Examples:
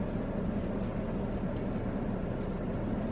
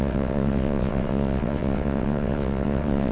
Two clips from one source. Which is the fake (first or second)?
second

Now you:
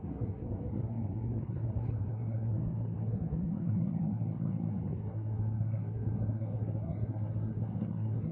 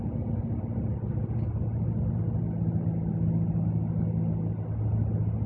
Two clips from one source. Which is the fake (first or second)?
first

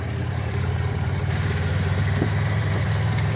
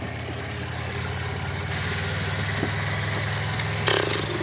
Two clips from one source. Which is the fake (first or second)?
first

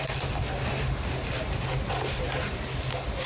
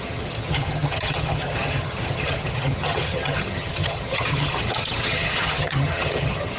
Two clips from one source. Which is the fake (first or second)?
second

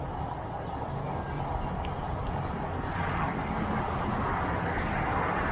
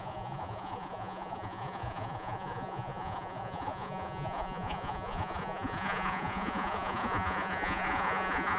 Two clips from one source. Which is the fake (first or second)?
second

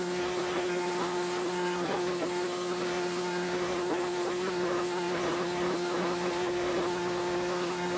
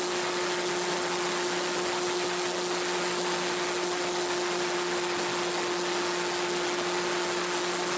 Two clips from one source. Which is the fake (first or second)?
first